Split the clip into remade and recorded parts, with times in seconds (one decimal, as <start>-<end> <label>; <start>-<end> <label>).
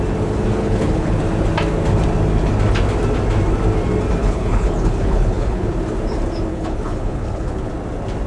0.0-0.6 recorded; 0.6-1.2 remade; 1.2-4.2 recorded; 4.2-5.7 remade; 5.7-6.5 recorded; 6.5-7.7 remade; 7.7-8.3 recorded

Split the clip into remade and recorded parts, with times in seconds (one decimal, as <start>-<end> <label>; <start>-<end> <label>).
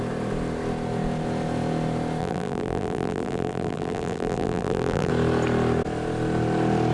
0.0-2.2 recorded; 2.2-5.1 remade; 5.1-6.9 recorded